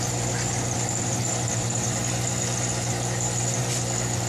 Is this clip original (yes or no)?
no